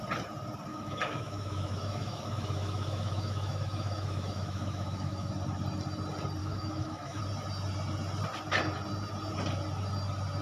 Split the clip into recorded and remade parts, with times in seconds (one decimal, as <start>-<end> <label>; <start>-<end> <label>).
0.0-0.7 recorded; 0.7-5.3 remade; 5.3-6.4 recorded; 6.4-7.2 remade; 7.2-10.4 recorded